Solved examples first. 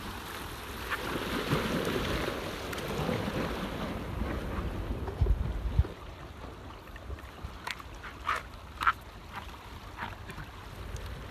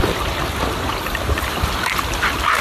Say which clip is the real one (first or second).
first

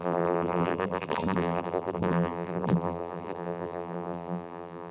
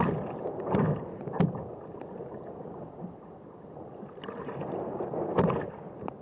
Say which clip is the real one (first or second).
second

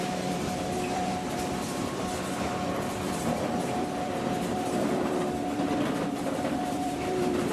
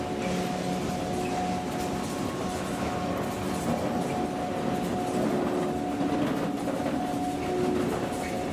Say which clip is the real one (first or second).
second